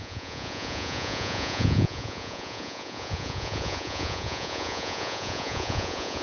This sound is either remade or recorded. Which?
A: remade